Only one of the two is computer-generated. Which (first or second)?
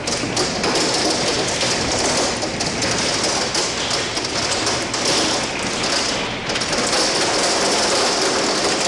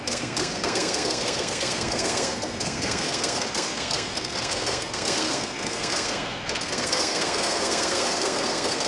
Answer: second